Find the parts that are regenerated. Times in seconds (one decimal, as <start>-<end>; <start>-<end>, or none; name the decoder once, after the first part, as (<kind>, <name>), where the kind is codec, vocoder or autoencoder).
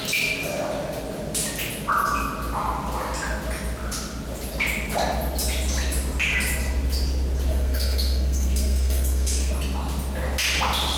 7.5-9.5 (codec, SNAC)